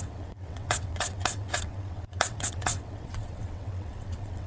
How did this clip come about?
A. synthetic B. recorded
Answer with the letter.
A